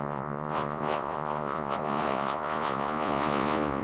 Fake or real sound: fake